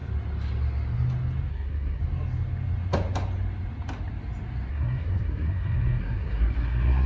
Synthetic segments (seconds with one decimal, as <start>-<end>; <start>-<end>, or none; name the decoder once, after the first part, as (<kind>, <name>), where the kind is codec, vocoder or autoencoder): 1.5-2.0 (codec, SNAC); 4.7-7.1